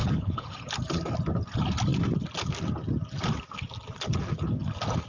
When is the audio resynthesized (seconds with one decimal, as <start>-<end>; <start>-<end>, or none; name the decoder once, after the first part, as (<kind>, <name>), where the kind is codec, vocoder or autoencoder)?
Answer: 0.0-0.7 (codec, HILCodec)